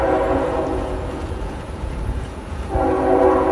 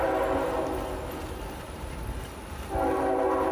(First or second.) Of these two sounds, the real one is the second